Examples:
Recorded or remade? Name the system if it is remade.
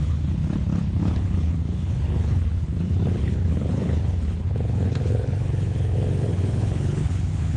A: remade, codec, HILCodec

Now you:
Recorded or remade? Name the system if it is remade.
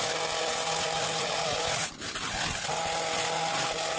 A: recorded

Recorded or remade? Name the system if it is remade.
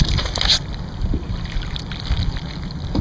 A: recorded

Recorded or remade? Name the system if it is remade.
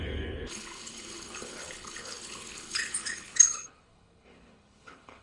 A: remade, codec, HILCodec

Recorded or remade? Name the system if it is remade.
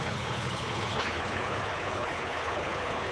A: remade, codec, HILCodec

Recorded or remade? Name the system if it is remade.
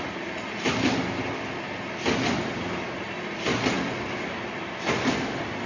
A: recorded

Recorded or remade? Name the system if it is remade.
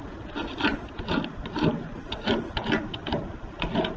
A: recorded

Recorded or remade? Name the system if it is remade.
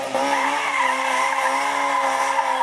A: recorded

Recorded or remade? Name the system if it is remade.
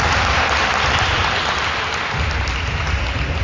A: recorded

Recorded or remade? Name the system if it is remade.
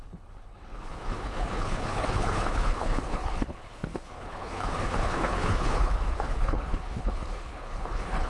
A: remade, codec, HILCodec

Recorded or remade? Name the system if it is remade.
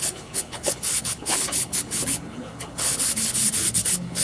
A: remade, codec, HILCodec